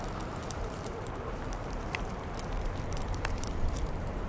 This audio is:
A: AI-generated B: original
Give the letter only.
A